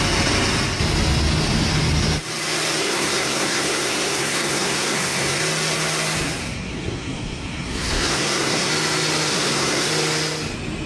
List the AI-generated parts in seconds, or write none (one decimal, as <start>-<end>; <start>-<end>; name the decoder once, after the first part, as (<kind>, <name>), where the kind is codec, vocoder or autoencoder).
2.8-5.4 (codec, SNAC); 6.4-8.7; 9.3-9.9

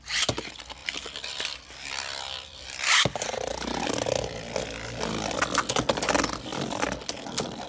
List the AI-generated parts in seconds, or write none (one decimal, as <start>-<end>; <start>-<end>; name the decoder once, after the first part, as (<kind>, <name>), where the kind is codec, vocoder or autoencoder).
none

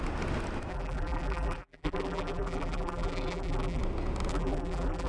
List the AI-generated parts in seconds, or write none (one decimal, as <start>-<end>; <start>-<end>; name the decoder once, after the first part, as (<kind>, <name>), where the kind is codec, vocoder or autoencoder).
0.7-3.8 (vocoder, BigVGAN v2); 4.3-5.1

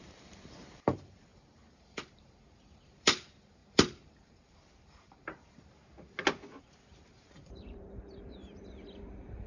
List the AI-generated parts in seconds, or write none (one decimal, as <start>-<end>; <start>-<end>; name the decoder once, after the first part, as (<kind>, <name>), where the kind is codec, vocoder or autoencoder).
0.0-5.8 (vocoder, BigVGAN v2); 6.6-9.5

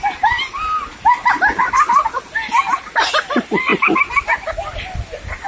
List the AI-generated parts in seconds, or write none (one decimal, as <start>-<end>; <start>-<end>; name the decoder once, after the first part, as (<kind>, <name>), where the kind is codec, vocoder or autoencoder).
none

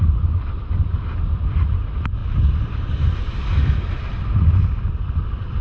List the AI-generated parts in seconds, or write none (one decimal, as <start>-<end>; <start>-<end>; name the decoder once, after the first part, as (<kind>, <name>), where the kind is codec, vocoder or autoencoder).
none

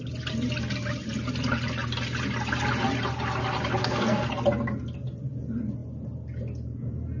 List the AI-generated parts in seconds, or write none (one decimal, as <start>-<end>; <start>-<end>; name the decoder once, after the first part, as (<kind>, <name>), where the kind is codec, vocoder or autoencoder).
3.8-4.3 (codec, SNAC)